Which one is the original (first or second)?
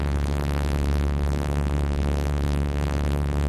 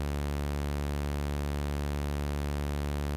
second